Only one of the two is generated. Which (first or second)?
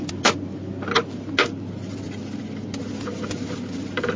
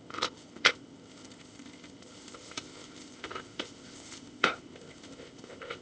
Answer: second